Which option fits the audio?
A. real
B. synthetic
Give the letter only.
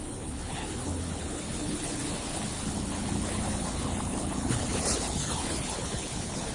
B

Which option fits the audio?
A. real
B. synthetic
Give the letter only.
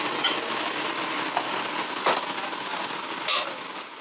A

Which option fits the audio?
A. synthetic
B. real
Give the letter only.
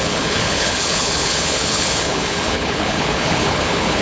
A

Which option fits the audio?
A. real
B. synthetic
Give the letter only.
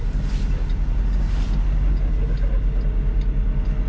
A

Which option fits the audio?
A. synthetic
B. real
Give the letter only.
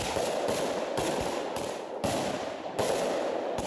B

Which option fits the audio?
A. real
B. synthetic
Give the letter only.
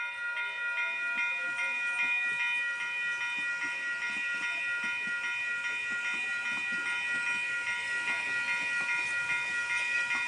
A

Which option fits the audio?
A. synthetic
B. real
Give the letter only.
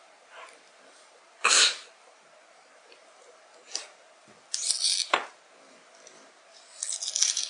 B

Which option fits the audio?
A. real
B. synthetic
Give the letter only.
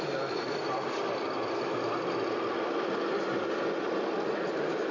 A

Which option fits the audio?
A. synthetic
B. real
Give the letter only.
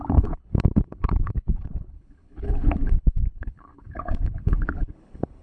A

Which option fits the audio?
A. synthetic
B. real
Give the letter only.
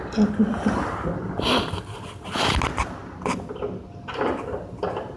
B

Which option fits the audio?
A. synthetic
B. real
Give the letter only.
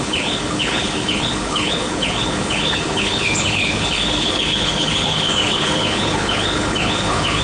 A